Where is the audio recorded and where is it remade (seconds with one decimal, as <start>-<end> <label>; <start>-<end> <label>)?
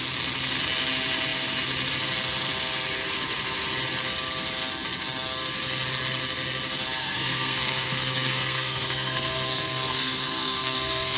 0.0-7.0 recorded; 7.0-11.2 remade